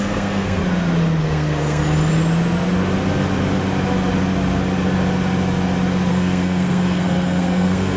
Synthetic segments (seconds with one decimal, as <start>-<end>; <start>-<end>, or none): 0.0-0.6; 1.2-1.8; 6.1-8.0